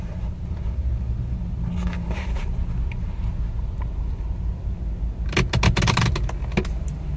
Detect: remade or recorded recorded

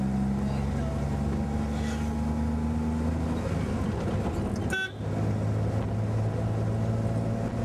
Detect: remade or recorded recorded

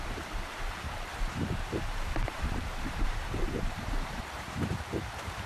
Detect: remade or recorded remade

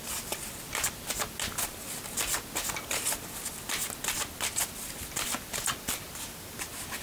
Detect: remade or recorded recorded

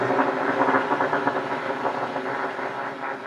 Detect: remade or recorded recorded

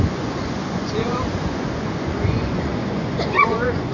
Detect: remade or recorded remade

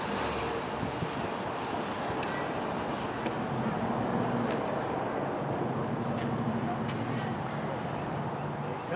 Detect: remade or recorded recorded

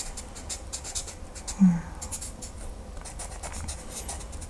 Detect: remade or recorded recorded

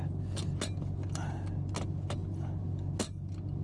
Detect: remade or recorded recorded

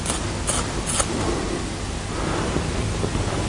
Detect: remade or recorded recorded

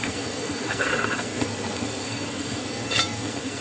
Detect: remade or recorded remade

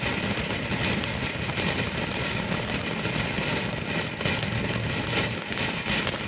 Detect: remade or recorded recorded